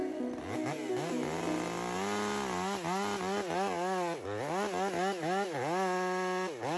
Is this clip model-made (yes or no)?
no